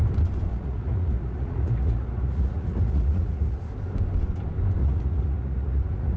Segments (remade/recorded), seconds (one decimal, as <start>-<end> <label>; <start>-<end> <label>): 0.0-0.5 recorded; 0.5-3.6 remade; 3.6-4.8 recorded; 4.8-6.2 remade